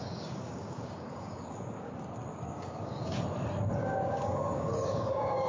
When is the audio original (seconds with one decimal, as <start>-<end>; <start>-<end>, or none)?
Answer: 1.9-2.3; 3.2-3.8